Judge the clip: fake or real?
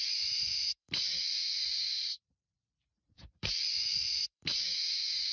fake